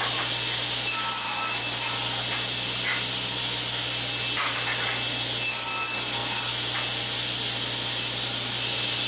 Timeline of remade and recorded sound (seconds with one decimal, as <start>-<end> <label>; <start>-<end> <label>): 0.0-9.1 recorded